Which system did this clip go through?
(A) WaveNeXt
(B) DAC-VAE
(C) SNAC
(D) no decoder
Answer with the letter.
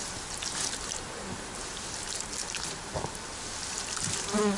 D